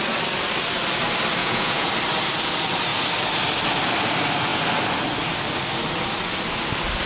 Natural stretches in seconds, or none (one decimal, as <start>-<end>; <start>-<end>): 0.0-1.4; 1.9-7.1